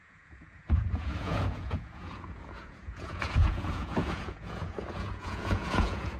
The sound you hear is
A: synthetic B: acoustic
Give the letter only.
A